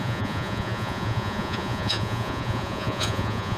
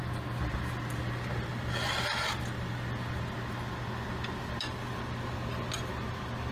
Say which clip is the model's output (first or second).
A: first